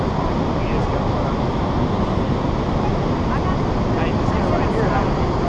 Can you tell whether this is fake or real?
real